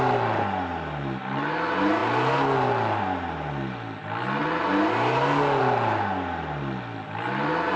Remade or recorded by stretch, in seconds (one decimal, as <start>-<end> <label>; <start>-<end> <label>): 0.0-7.8 recorded